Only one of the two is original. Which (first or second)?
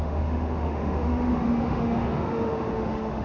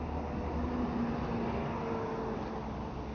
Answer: second